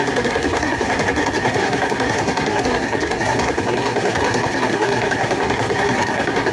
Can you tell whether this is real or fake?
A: fake